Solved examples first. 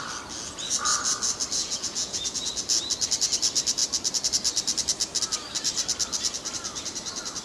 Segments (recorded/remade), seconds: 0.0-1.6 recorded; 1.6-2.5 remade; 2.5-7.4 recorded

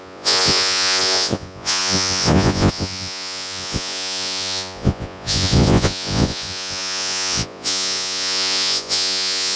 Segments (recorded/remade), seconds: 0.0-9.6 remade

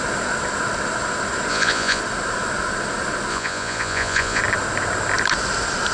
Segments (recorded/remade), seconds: 0.0-1.5 recorded; 1.5-2.0 remade; 2.0-3.3 recorded; 3.3-4.4 remade; 4.4-5.9 recorded

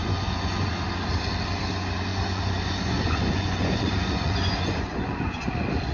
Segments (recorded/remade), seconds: 0.0-0.7 remade; 0.7-2.1 recorded; 2.1-5.5 remade; 5.5-5.9 recorded

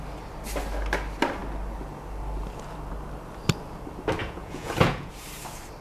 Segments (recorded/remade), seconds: 0.0-4.2 recorded; 4.2-5.1 remade; 5.1-5.8 recorded

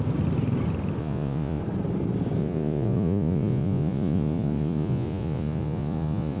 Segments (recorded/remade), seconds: 0.0-1.0 recorded; 1.0-1.6 remade; 1.6-2.4 recorded; 2.4-6.4 remade